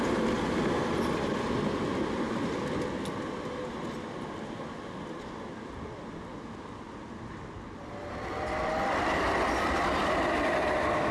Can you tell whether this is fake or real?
real